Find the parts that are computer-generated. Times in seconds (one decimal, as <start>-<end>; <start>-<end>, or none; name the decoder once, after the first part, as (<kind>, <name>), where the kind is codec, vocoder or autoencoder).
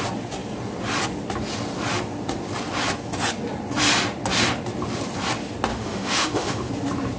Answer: 5.7-6.7 (autoencoder, DAC-VAE)